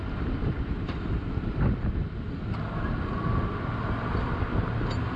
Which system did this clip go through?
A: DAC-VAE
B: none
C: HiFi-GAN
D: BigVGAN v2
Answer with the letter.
B